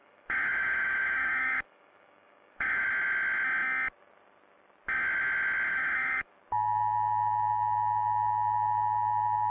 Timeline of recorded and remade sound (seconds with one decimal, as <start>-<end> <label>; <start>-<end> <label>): 0.0-2.8 remade; 2.8-5.7 recorded; 5.7-6.3 remade; 6.3-9.5 recorded